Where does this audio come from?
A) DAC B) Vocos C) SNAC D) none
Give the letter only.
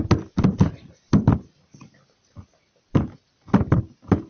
D